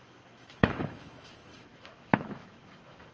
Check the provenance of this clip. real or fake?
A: fake